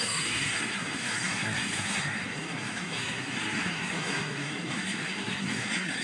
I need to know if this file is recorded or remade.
remade